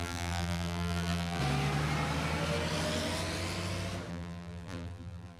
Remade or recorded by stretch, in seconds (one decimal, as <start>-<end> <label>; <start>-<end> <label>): 0.0-1.4 remade; 1.4-4.1 recorded; 4.1-5.4 remade